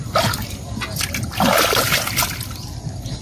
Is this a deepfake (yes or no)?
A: no